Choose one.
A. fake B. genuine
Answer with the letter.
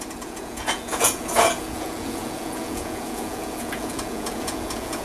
A